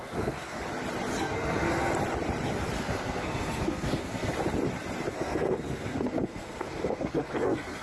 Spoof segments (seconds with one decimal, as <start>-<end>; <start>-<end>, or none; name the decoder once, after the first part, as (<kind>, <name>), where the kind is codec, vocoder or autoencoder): 0.0-0.6 (codec, SNAC); 1.2-1.9; 2.8-4.3; 5.1-7.8

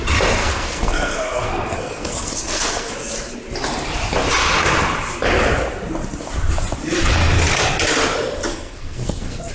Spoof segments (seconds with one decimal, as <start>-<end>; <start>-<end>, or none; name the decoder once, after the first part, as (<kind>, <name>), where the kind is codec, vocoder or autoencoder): 0.4-2.9 (codec, SNAC); 8.5-9.5

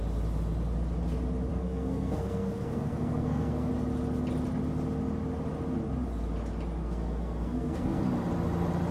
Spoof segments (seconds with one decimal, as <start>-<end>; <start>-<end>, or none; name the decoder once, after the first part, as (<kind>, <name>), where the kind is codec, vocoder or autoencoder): 1.5-3.7 (codec, SNAC); 6.8-8.0